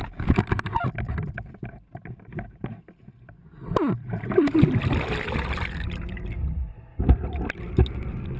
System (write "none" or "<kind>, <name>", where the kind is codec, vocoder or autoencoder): none